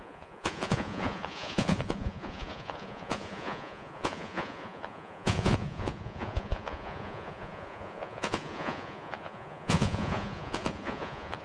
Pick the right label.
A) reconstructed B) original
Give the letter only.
A